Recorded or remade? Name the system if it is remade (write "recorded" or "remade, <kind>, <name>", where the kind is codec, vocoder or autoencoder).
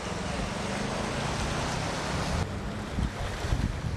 recorded